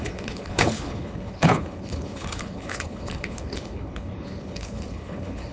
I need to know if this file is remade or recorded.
remade